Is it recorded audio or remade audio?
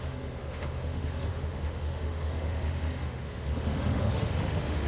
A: remade